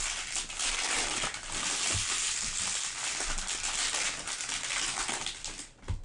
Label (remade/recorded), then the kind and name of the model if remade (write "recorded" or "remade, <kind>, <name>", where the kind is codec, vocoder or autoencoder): recorded